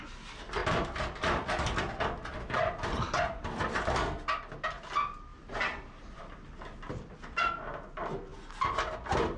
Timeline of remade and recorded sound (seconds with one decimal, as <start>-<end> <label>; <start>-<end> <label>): 0.0-0.6 recorded; 0.6-1.8 remade; 1.8-5.3 recorded; 5.3-6.2 remade; 6.2-9.4 recorded

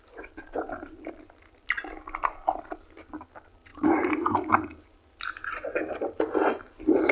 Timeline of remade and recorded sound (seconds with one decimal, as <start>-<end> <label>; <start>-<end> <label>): 0.0-7.1 recorded